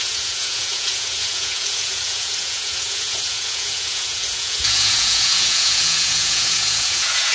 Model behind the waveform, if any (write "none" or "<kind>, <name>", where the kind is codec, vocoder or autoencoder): vocoder, Vocos